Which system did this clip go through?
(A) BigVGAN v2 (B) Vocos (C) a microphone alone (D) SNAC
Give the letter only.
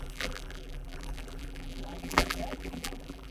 A